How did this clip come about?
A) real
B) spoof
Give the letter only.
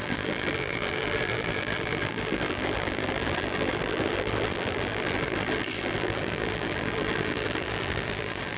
B